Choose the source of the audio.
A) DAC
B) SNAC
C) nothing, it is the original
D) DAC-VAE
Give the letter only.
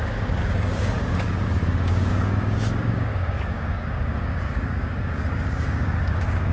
A